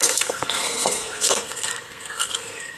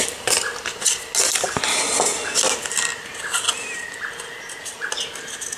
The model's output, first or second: first